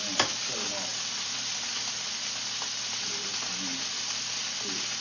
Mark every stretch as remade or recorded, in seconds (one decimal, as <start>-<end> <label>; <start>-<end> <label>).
0.0-5.0 recorded